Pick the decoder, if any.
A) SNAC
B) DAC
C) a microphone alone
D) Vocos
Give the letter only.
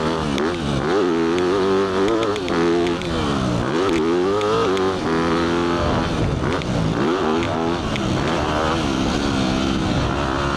C